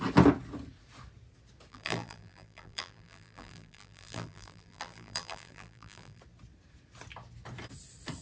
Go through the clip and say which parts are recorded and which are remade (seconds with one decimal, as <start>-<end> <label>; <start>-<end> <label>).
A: 0.0-1.7 recorded; 1.7-6.2 remade; 6.2-8.2 recorded